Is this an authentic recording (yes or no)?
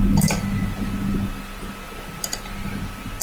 yes